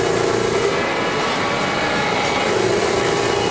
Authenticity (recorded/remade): recorded